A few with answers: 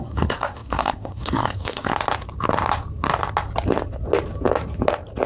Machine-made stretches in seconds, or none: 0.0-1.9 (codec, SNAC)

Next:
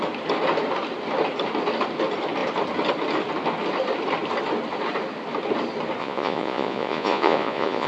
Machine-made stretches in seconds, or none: 6.0-7.9 (vocoder, Vocos)

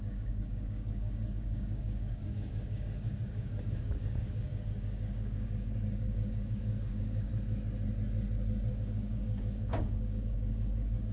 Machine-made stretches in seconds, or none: 0.0-7.3 (codec, DAC); 8.7-11.1